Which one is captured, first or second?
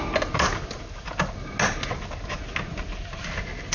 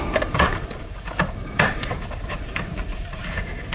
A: first